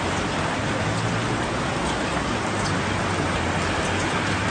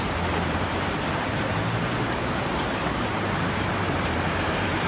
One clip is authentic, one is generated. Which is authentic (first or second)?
first